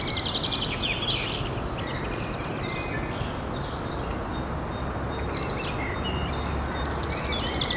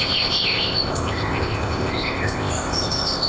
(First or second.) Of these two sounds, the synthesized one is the second